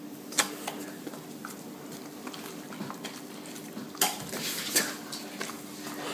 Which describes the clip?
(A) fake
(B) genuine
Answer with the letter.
B